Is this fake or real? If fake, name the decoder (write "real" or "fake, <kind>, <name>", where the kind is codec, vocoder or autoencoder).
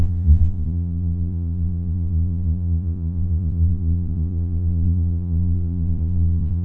fake, vocoder, Vocos